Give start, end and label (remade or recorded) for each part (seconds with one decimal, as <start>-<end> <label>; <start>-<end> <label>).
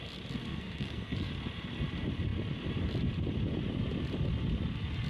0.0-0.4 recorded; 0.4-1.3 remade; 1.3-5.1 recorded